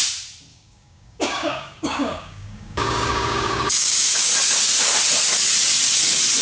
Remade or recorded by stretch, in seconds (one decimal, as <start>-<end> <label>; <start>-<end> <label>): 0.0-0.5 recorded; 0.5-4.3 remade; 4.3-6.4 recorded

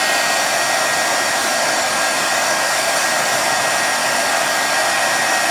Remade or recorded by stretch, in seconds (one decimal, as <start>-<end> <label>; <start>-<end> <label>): 0.0-1.4 recorded; 1.4-3.6 remade; 3.6-4.0 recorded; 4.0-5.0 remade; 5.0-5.5 recorded

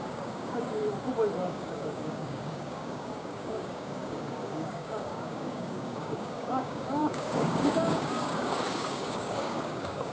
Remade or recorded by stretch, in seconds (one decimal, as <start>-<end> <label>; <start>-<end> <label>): 0.0-0.8 remade; 0.8-1.4 recorded; 1.4-10.1 remade

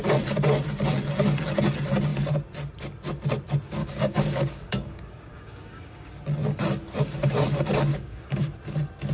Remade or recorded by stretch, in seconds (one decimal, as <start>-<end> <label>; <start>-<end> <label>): 0.0-3.8 recorded; 3.8-6.1 remade; 6.1-7.9 recorded; 7.9-8.5 remade; 8.5-9.1 recorded